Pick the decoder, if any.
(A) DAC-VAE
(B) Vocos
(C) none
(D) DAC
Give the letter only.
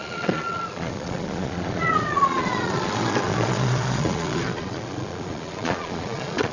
B